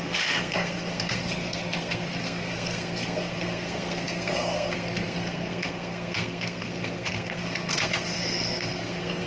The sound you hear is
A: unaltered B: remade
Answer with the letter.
B